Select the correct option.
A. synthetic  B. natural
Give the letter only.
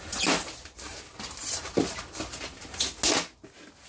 B